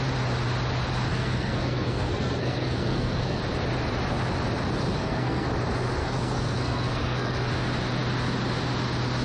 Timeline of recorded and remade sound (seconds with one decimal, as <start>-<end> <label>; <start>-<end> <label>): 0.0-1.1 recorded; 1.1-3.4 remade; 3.4-5.0 recorded; 5.0-5.5 remade; 5.5-6.0 recorded; 6.0-7.5 remade; 7.5-9.2 recorded